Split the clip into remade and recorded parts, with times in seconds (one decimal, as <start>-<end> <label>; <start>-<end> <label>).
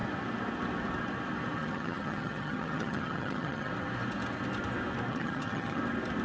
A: 0.0-1.6 recorded; 1.6-3.7 remade; 3.7-5.1 recorded; 5.1-5.8 remade; 5.8-6.2 recorded